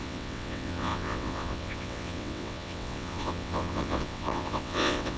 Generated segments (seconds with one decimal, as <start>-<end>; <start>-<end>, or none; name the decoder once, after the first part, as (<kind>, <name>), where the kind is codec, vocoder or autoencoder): 0.0-5.2 (vocoder, WaveNeXt)